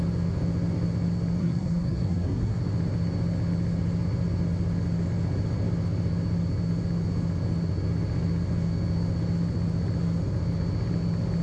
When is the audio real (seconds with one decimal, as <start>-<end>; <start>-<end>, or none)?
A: 0.0-1.4; 2.6-11.4